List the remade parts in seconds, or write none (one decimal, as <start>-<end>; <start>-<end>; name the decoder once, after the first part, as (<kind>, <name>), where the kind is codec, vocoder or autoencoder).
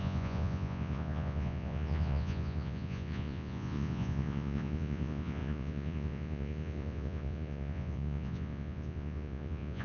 0.0-9.8 (vocoder, Vocos)